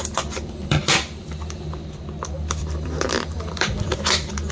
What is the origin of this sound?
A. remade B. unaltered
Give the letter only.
A